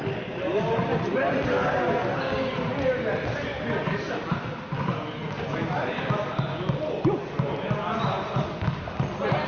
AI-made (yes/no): no